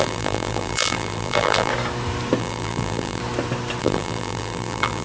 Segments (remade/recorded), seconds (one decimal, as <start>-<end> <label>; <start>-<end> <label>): 0.0-1.7 remade; 1.7-2.4 recorded; 2.4-3.2 remade; 3.2-3.8 recorded; 3.8-5.0 remade